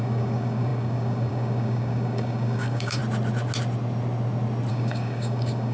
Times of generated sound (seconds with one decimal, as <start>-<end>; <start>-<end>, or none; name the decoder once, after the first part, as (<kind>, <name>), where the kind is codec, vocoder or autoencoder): 0.0-3.0 (codec, DAC); 4.7-5.7